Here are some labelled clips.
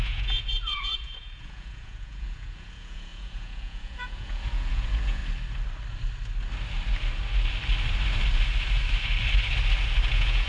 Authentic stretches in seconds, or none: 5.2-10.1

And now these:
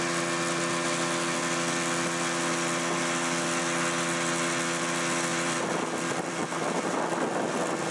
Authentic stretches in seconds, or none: 0.0-5.3; 7.0-7.9